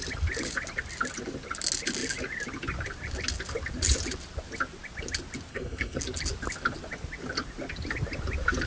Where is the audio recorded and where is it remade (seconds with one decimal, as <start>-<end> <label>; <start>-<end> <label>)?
0.0-5.5 recorded; 5.5-6.0 remade; 6.0-8.7 recorded